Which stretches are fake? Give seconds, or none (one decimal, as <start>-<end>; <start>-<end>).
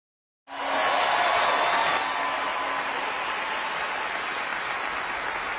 none